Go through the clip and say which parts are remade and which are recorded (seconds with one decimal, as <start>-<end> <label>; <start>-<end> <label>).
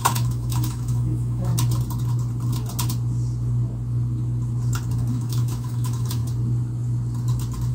0.0-1.5 remade; 1.5-5.1 recorded; 5.1-6.2 remade; 6.2-7.7 recorded